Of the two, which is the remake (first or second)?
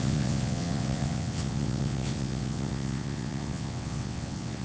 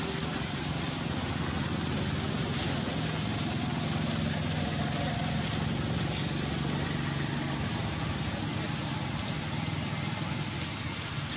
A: first